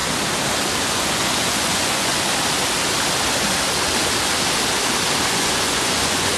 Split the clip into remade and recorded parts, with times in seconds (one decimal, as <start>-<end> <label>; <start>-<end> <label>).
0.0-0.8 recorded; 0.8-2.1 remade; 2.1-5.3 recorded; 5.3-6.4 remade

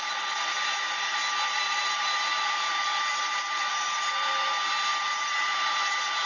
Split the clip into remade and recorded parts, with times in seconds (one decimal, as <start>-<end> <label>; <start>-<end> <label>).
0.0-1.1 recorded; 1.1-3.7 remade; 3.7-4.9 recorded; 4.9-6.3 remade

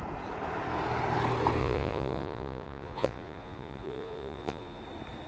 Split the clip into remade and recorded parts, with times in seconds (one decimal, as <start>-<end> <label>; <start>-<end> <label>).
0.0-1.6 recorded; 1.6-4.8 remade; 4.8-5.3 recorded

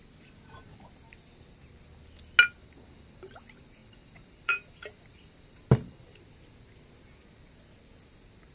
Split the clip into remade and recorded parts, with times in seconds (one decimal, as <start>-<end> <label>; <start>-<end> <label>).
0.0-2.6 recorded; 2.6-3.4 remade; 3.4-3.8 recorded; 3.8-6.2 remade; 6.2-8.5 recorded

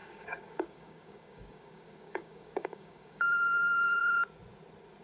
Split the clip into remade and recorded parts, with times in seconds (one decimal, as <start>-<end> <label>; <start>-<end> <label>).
0.0-4.0 remade; 4.0-5.0 recorded

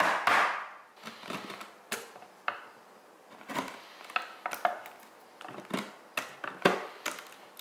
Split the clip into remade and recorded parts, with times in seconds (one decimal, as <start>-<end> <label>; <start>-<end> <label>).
0.0-7.6 recorded

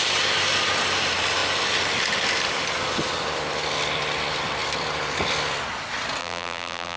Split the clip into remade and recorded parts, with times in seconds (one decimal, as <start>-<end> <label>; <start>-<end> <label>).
0.0-6.2 recorded; 6.2-7.0 remade

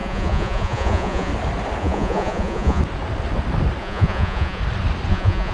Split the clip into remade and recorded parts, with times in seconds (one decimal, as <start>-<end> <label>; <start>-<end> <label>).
0.0-1.3 remade; 1.3-1.8 recorded; 1.8-2.8 remade; 2.8-3.8 recorded; 3.8-4.6 remade; 4.6-5.1 recorded; 5.1-5.5 remade